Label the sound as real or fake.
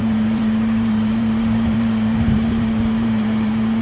fake